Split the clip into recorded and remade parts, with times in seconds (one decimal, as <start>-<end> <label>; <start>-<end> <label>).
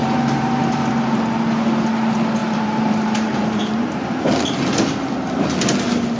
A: 0.0-0.9 remade; 0.9-2.4 recorded; 2.4-3.6 remade; 3.6-6.2 recorded